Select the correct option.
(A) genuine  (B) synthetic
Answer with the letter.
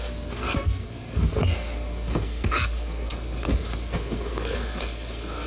B